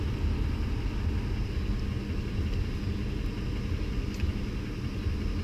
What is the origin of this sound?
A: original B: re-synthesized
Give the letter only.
A